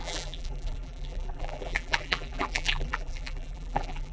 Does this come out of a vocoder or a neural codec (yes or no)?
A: yes